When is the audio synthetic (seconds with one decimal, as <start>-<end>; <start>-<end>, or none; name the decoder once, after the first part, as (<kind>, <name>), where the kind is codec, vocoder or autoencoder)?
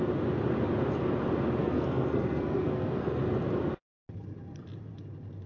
1.6-3.2 (codec, SNAC)